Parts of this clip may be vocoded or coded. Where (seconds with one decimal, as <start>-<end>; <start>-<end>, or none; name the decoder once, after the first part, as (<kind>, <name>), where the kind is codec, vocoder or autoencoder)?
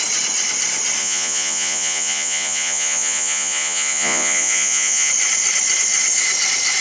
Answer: 1.0-5.1 (vocoder, Vocos)